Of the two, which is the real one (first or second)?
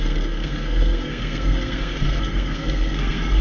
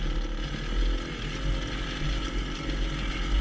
second